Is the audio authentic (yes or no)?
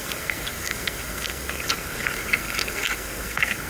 no